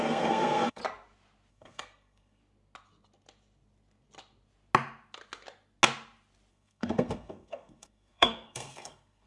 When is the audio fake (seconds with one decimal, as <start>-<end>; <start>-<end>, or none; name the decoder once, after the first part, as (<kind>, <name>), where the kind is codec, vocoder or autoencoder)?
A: 0.0-0.8 (codec, SNAC); 1.5-2.4; 6.5-9.3